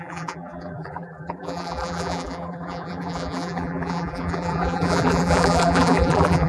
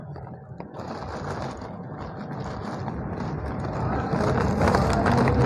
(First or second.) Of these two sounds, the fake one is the first